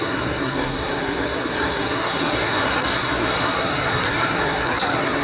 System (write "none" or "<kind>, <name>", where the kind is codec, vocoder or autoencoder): codec, SNAC